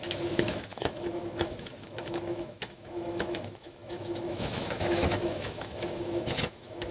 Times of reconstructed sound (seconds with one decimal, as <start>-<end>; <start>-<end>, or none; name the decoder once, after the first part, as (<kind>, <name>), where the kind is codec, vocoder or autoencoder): 0.0-6.9 (autoencoder, DAC-VAE)